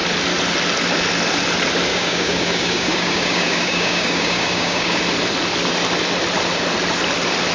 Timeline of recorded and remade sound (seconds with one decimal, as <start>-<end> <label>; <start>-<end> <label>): 0.0-1.9 recorded; 1.9-5.0 remade; 5.0-7.5 recorded